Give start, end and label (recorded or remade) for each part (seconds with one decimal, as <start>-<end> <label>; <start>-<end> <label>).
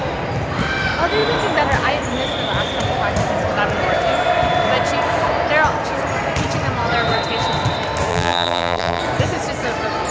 0.0-8.1 recorded; 8.1-9.0 remade; 9.0-10.1 recorded